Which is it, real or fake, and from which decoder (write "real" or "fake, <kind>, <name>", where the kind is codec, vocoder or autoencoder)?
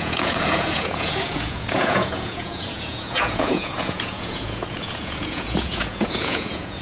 fake, vocoder, Vocos